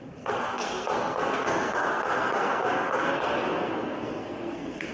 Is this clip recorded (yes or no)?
no